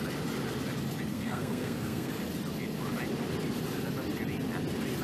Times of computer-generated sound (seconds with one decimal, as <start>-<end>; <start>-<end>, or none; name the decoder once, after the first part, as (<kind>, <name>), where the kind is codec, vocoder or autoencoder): 1.1-2.1 (codec, SNAC)